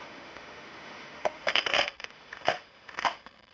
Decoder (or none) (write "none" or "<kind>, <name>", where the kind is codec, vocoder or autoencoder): autoencoder, DAC-VAE